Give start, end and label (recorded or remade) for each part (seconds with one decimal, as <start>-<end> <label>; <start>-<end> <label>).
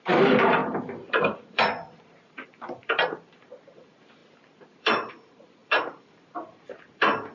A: 0.0-7.3 remade